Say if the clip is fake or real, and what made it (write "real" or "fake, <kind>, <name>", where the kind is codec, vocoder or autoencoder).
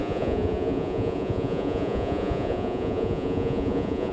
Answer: fake, vocoder, Vocos